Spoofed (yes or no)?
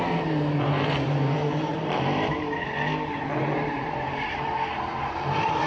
yes